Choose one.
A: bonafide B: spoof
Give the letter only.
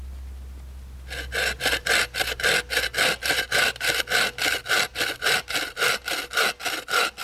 A